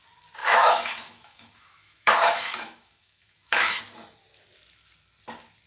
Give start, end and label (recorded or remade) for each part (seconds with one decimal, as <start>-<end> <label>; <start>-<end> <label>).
0.0-0.4 recorded; 0.4-3.8 remade; 3.8-5.7 recorded